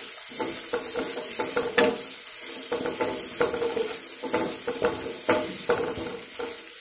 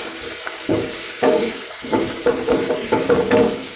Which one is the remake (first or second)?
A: second